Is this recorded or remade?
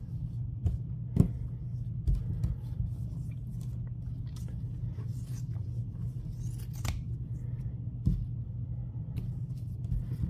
recorded